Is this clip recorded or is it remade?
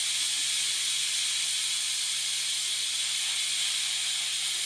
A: recorded